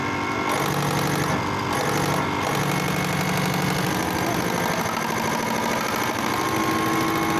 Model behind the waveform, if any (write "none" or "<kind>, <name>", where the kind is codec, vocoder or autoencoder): none